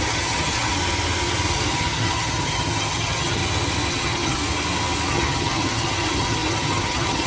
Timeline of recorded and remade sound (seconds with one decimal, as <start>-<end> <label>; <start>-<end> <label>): 0.0-0.7 remade; 0.7-1.7 recorded; 1.7-3.4 remade; 3.4-3.9 recorded; 3.9-4.4 remade; 4.4-5.1 recorded; 5.1-7.3 remade